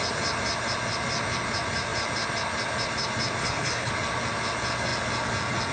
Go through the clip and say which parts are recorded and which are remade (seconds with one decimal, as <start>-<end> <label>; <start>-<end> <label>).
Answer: 0.0-3.4 recorded; 3.4-3.9 remade; 3.9-5.7 recorded